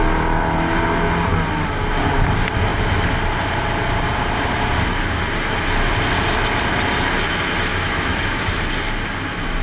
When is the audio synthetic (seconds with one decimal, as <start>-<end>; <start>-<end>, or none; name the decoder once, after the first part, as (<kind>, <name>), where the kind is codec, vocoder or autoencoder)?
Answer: 7.7-8.4 (autoencoder, DAC-VAE)